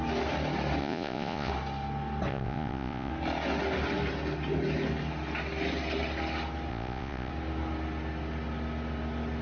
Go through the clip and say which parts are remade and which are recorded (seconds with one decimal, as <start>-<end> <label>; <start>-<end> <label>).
0.0-0.8 recorded; 0.8-1.5 remade; 1.5-2.3 recorded; 2.3-3.1 remade; 3.1-6.7 recorded; 6.7-7.3 remade; 7.3-9.4 recorded